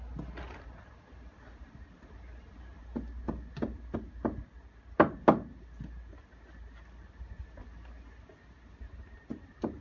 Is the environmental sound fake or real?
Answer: real